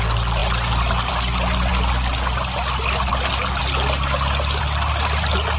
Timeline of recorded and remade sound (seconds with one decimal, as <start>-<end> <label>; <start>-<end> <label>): 0.0-5.6 recorded